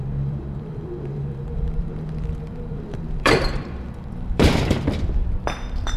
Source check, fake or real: fake